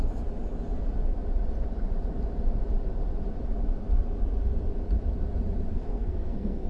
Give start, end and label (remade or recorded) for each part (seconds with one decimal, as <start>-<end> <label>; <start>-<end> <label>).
0.0-5.7 recorded; 5.7-6.7 remade